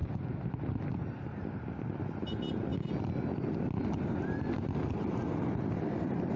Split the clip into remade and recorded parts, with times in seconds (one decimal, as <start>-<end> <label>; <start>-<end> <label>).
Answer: 0.0-6.4 recorded